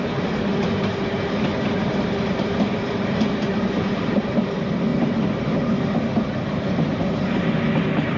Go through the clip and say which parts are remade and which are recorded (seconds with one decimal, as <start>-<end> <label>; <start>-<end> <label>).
0.0-3.5 recorded; 3.5-4.0 remade; 4.0-4.9 recorded; 4.9-5.5 remade; 5.5-8.2 recorded